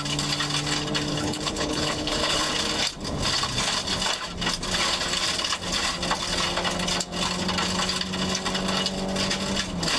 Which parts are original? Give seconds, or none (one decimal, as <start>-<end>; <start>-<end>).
0.0-1.1; 2.5-10.0